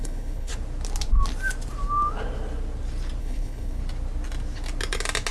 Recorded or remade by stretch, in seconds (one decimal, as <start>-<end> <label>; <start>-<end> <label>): 0.0-0.5 remade; 0.5-3.2 recorded; 3.2-3.8 remade; 3.8-5.3 recorded